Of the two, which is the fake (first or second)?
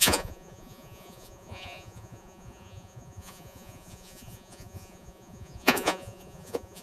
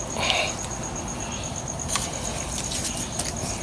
first